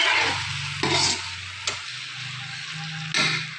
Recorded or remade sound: recorded